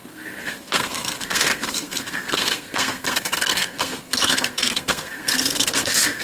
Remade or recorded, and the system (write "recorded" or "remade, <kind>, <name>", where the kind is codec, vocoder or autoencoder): remade, codec, SNAC